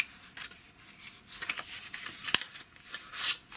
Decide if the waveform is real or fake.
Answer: real